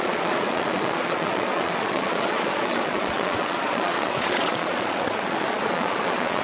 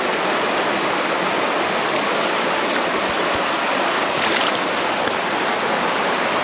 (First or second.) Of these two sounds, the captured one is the second